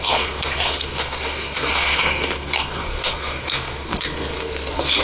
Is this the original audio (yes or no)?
no